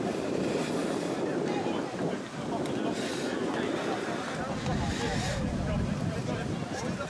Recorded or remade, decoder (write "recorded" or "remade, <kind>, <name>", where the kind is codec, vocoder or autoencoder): recorded